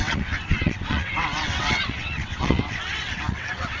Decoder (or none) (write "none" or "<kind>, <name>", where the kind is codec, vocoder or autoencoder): vocoder, WaveNeXt